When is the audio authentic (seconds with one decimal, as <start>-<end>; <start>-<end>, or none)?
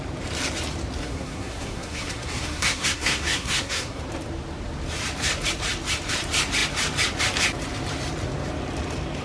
0.0-1.0; 4.0-9.2